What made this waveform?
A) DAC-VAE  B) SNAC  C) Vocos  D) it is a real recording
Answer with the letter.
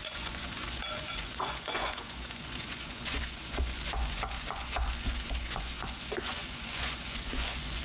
C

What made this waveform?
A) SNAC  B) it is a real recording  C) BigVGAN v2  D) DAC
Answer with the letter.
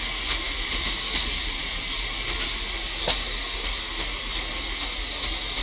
B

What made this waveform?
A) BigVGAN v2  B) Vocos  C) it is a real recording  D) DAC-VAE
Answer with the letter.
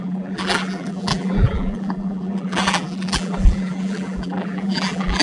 A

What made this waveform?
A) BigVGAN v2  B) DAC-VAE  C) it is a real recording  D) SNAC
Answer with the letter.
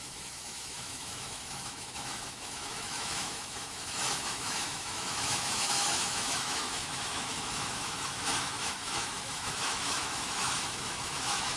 B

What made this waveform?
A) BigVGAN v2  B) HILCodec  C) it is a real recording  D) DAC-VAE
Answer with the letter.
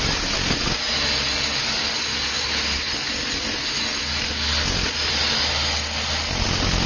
C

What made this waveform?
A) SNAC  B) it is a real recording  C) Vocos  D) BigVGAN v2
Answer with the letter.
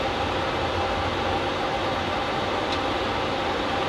B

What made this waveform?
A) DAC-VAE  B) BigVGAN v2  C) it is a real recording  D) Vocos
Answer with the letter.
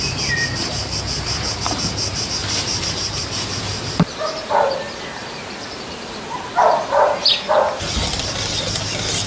B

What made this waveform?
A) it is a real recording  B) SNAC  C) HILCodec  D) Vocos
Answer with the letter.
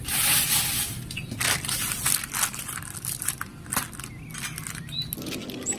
A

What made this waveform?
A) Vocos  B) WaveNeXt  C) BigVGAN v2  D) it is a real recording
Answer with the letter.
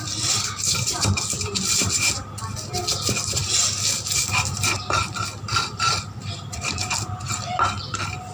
D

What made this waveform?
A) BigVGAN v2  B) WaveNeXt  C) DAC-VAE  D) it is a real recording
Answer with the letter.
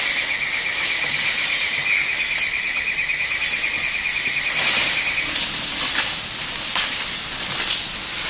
D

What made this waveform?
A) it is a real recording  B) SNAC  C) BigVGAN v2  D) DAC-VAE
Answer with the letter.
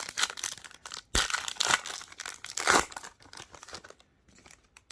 A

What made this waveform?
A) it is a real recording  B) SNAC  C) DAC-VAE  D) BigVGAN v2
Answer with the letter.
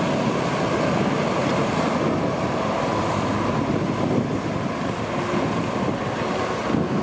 A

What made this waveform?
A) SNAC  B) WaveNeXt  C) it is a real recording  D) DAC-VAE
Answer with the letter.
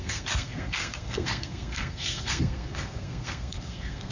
A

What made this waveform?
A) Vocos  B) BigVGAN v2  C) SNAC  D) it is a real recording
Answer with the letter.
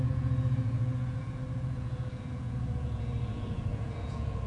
A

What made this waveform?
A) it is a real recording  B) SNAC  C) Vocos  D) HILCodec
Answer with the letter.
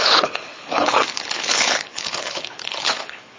D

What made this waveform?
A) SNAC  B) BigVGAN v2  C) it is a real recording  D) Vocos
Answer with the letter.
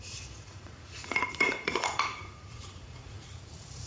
D